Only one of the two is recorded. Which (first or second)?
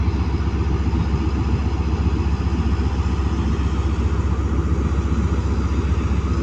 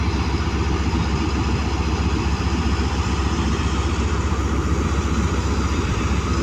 first